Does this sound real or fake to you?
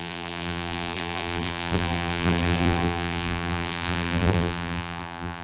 fake